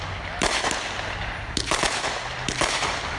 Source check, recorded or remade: recorded